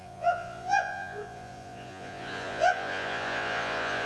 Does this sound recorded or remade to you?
remade